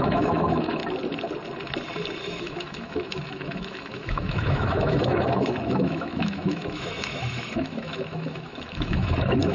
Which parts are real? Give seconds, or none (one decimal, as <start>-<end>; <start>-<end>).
0.8-2.2